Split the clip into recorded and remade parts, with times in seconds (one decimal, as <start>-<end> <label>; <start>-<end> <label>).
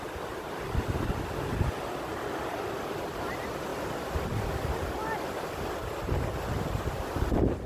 0.0-7.7 recorded